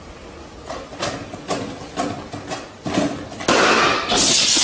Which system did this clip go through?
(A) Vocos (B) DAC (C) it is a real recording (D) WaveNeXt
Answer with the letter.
C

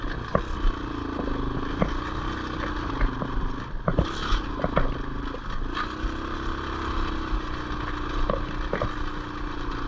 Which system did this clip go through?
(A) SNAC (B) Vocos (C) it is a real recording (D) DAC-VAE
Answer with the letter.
C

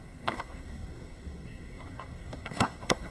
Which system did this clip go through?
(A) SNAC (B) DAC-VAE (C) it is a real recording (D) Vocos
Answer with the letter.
A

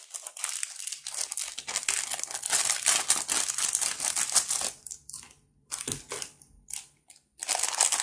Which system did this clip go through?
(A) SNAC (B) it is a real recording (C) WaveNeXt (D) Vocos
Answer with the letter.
B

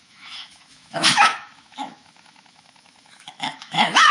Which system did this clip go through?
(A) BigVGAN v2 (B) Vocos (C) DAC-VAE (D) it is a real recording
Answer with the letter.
C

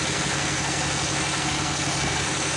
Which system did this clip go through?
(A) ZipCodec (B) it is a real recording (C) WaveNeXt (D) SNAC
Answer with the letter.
D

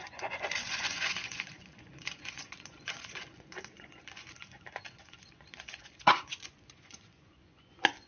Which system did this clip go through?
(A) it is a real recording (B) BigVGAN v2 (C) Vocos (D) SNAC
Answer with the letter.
C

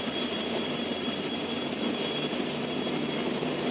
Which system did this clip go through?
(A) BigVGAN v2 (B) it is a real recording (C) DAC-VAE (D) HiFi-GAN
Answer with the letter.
A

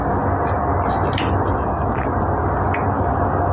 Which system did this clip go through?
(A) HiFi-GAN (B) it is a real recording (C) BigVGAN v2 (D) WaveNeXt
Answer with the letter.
B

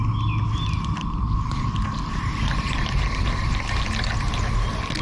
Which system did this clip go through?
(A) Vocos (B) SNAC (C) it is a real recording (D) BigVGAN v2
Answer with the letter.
C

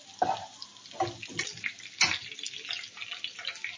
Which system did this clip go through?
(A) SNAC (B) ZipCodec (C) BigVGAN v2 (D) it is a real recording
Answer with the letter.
D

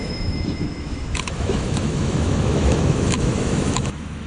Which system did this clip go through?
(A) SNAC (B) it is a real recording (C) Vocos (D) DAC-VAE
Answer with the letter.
D